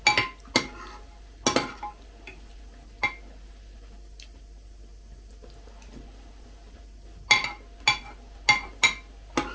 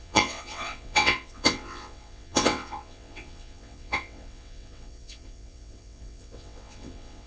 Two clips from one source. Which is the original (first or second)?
first